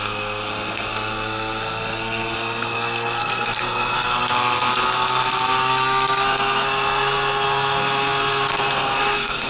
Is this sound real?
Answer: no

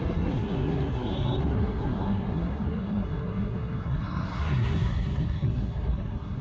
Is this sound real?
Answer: no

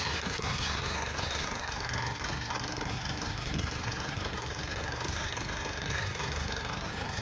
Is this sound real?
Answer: no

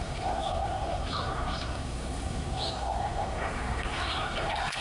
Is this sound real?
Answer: no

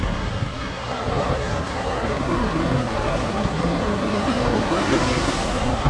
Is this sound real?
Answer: no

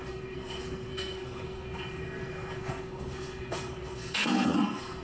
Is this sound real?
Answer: no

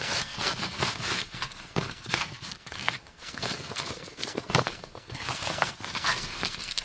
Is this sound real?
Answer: no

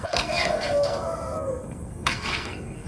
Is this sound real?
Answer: no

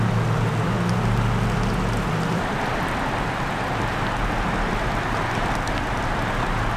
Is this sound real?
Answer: yes